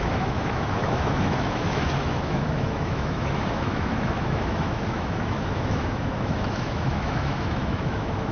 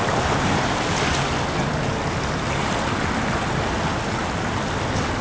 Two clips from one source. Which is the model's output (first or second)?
first